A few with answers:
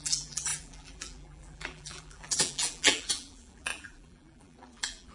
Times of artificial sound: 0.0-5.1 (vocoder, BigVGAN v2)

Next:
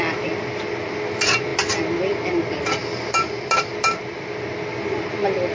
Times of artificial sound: 2.8-4.0 (vocoder, BigVGAN v2)

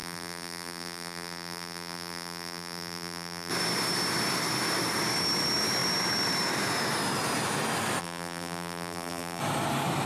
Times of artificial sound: 0.0-3.5 (vocoder, BigVGAN v2); 8.0-9.4

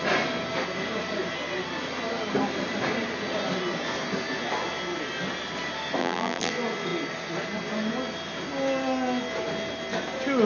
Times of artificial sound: 6.0-6.5 (vocoder, BigVGAN v2)

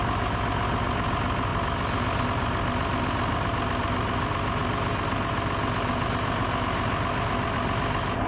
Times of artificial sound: none

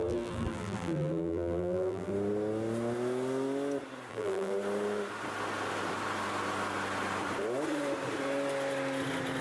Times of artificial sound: 0.0-2.1 (vocoder, BigVGAN v2); 4.1-4.5

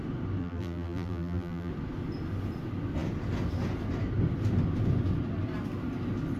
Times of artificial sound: 0.4-1.7 (vocoder, BigVGAN v2)